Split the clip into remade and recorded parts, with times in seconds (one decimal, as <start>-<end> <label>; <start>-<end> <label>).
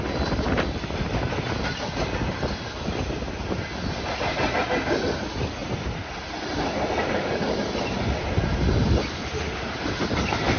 0.0-5.6 recorded; 5.6-7.7 remade; 7.7-10.6 recorded